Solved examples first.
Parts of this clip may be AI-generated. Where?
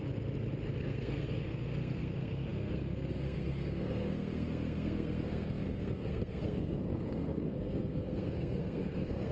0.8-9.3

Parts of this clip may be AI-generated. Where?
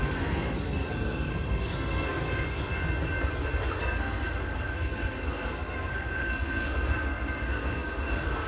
0.0-2.8; 3.8-8.5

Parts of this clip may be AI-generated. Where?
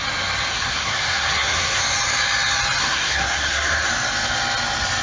0.5-1.8; 2.8-3.9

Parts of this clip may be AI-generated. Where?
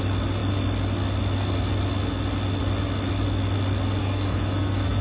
4.0-5.0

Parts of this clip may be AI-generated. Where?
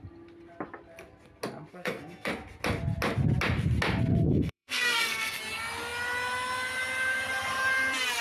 1.7-2.3; 4.1-5.4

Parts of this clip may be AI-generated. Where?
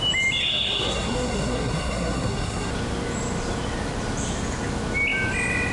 0.4-2.7